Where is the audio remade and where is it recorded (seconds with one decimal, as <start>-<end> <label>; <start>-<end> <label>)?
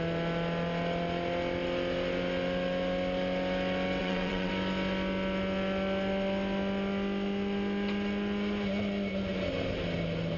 0.0-4.0 recorded; 4.0-4.5 remade; 4.5-10.4 recorded